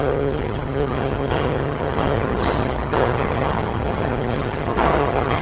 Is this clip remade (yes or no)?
yes